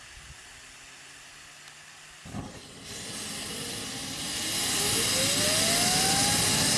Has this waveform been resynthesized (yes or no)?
no